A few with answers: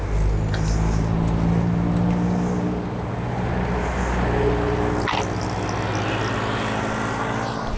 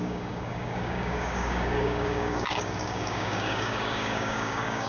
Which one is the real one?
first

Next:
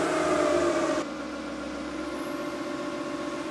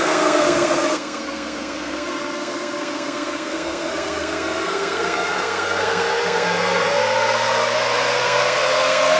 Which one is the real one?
first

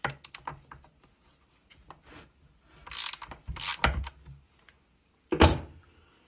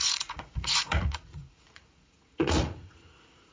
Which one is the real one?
first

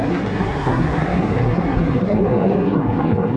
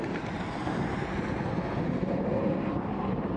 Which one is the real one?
second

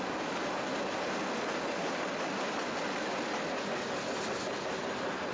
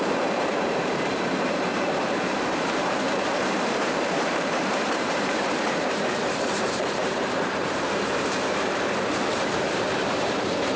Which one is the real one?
first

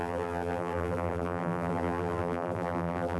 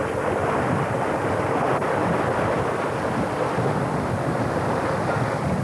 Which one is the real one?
second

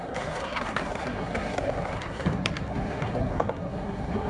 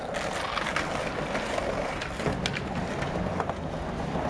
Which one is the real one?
second